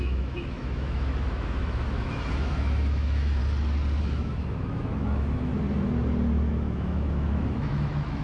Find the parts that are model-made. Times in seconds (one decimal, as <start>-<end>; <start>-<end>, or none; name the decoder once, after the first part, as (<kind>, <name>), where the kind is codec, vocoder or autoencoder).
0.0-3.4 (autoencoder, DAC-VAE); 4.0-5.5; 6.5-8.2